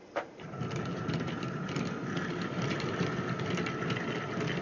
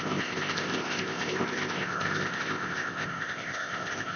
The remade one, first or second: second